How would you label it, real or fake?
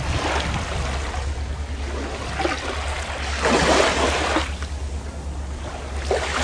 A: real